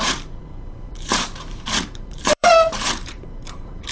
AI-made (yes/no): yes